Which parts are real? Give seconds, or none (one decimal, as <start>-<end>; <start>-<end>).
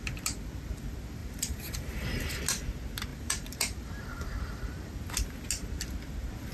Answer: 0.0-1.2; 2.4-3.1; 4.9-6.5